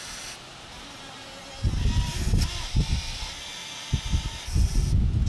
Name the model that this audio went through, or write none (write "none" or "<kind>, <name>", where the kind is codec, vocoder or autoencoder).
none